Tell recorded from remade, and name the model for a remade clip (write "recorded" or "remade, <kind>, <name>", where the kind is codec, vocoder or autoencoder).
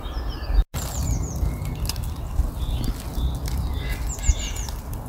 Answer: recorded